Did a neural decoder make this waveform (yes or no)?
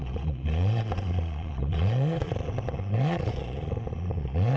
yes